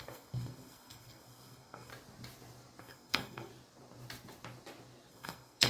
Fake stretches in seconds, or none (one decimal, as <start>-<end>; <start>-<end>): 0.0-1.9; 2.8-3.5; 5.1-5.7